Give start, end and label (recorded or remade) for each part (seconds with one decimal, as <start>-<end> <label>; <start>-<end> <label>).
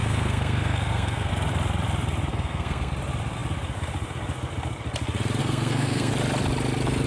0.0-1.3 remade; 1.3-2.3 recorded; 2.3-2.9 remade; 2.9-5.4 recorded; 5.4-6.1 remade; 6.1-7.1 recorded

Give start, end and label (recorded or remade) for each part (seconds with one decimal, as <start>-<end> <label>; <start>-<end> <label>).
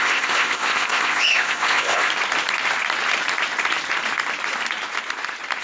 0.0-2.1 remade; 2.1-5.6 recorded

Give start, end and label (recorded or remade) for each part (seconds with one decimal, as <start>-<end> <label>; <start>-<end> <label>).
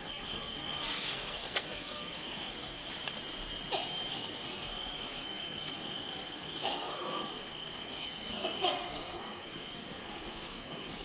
0.0-2.8 remade; 2.8-4.1 recorded; 4.1-11.0 remade